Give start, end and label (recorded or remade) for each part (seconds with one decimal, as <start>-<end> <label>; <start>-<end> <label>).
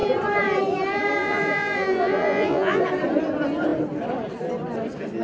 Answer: 0.0-1.2 recorded; 1.2-2.8 remade; 2.8-5.2 recorded